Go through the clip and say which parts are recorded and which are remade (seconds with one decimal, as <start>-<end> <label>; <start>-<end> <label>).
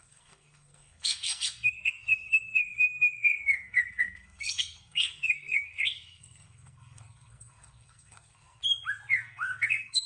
0.0-8.6 remade; 8.6-9.1 recorded; 9.1-10.1 remade